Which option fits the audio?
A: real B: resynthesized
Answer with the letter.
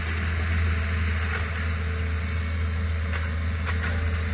A